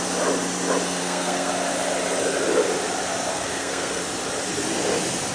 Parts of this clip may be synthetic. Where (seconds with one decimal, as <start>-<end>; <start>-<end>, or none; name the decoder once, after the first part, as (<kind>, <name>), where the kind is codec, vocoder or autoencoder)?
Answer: 1.0-1.5 (codec, SNAC); 3.3-4.0